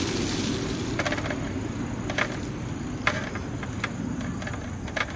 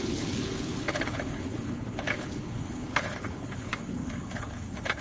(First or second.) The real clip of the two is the first